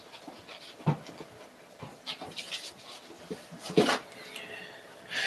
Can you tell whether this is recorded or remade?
recorded